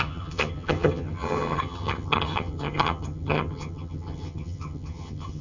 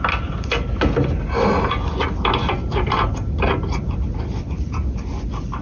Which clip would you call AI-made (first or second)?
first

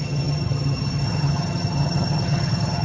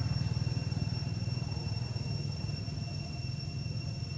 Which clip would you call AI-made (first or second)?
first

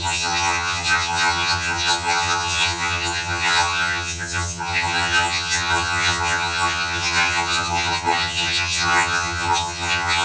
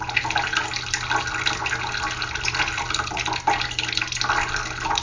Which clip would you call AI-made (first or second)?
first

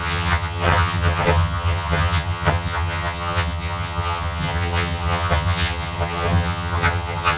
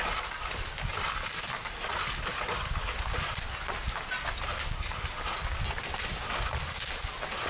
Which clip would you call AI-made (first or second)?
first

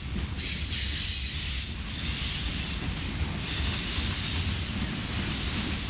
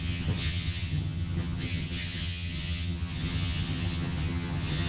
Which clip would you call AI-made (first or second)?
second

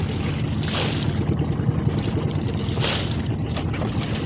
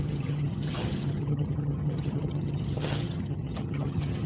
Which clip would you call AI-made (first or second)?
second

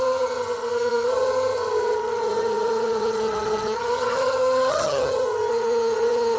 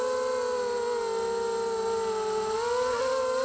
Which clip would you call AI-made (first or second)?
first